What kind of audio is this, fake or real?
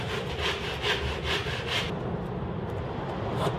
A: real